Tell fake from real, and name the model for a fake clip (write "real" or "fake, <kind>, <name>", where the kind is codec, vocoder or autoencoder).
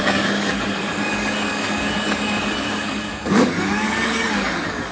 fake, codec, DAC